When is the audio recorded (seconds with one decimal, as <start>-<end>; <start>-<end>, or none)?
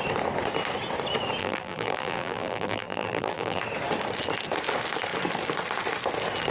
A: 0.0-1.4; 3.6-6.5